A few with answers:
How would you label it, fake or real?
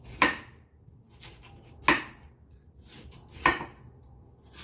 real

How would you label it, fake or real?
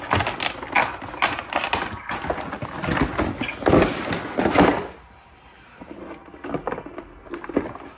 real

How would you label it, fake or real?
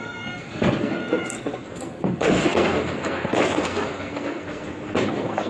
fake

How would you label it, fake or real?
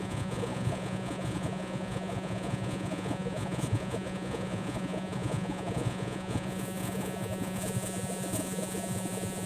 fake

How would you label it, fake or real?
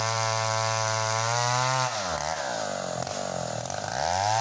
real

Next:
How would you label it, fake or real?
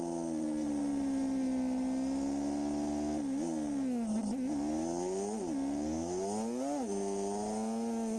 real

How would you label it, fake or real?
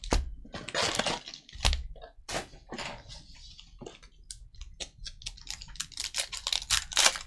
real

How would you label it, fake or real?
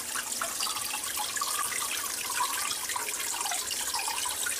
real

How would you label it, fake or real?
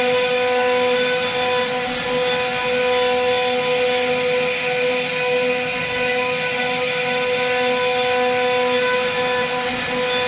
real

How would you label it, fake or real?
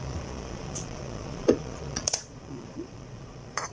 fake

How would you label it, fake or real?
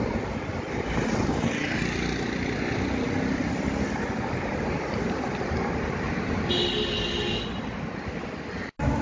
real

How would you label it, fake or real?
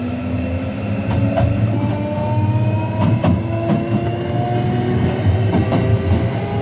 real